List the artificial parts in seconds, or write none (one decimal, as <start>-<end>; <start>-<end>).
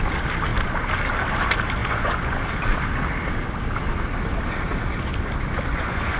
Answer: 1.8-2.4; 5.7-6.2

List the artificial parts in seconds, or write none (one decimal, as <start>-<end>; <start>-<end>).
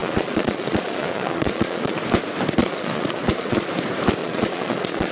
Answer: 0.0-2.0; 2.6-3.7; 4.2-5.1